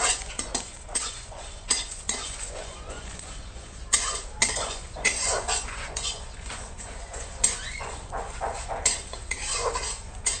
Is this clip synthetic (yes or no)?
yes